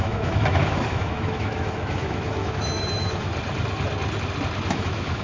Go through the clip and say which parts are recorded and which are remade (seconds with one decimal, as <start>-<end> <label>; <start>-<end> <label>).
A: 0.0-3.3 remade; 3.3-4.7 recorded; 4.7-5.2 remade